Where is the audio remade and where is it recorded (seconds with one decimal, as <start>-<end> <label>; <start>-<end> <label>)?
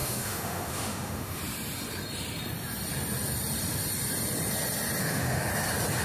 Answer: 0.0-1.4 remade; 1.4-5.0 recorded; 5.0-5.5 remade; 5.5-6.0 recorded